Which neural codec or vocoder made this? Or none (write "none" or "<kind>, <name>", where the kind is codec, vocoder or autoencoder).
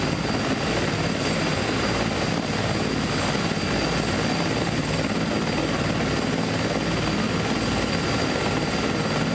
none